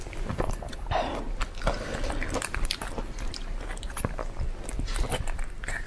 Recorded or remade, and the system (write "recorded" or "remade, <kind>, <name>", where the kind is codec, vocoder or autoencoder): remade, vocoder, BigVGAN v2